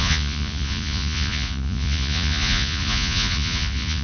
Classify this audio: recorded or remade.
remade